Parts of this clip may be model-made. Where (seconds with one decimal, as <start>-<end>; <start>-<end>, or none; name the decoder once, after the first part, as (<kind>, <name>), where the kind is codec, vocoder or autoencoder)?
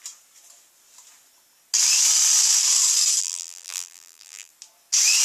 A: 3.2-4.5 (vocoder, BigVGAN v2)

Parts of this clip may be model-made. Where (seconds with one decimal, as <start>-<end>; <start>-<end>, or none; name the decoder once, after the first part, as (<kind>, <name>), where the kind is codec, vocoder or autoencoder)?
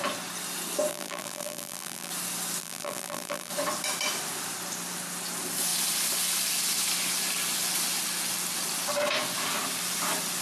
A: 0.9-2.1 (vocoder, BigVGAN v2); 2.6-3.5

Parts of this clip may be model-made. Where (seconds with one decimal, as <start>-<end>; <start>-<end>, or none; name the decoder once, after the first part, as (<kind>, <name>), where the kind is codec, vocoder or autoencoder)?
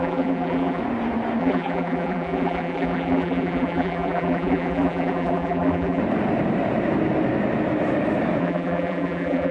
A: 0.0-0.8 (vocoder, BigVGAN v2); 1.4-6.0; 8.4-9.5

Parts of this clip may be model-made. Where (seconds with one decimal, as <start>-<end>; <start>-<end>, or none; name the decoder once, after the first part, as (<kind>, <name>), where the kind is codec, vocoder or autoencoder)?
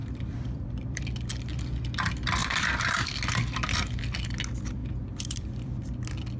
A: 0.0-1.0 (vocoder, BigVGAN v2); 2.4-3.1; 4.8-5.8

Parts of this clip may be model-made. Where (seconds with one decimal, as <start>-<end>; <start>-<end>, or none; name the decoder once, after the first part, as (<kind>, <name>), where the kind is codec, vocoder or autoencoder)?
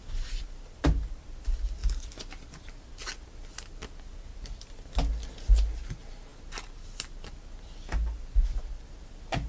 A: 4.3-4.9 (vocoder, BigVGAN v2)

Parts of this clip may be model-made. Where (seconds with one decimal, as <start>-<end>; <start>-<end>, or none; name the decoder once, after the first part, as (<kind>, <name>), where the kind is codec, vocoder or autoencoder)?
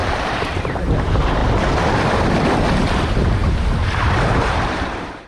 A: 0.0-1.4 (vocoder, BigVGAN v2); 3.0-3.4; 4.0-5.3